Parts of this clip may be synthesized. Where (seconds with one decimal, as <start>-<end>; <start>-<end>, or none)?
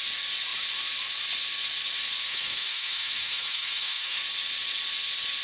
2.3-4.2